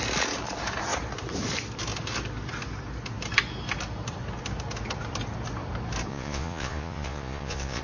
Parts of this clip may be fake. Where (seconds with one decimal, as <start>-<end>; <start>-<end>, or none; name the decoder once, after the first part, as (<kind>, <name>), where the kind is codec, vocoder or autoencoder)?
6.1-7.8 (vocoder, Vocos)